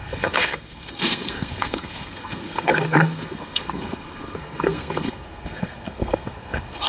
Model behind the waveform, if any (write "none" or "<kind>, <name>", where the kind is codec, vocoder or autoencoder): codec, SNAC